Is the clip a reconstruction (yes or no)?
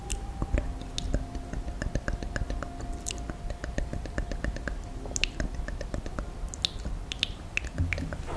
no